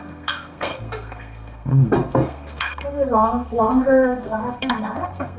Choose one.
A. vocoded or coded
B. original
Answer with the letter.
A